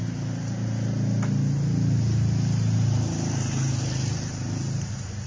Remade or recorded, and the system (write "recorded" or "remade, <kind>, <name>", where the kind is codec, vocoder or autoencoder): recorded